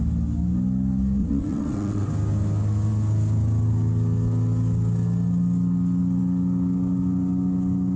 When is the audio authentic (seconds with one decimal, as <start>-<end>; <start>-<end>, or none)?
0.0-1.2; 2.1-8.0